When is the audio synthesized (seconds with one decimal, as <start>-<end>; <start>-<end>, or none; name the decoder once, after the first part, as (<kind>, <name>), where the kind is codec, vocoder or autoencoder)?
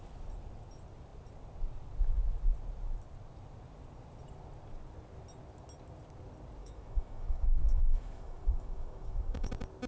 6.6-9.5 (autoencoder, DAC-VAE)